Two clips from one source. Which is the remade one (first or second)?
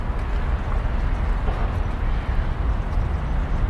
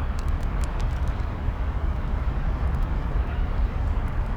second